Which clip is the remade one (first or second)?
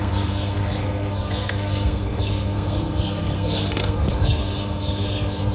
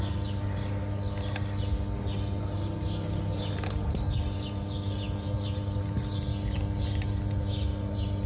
first